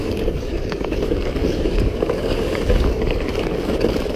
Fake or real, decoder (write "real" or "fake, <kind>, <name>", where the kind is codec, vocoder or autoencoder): fake, codec, DAC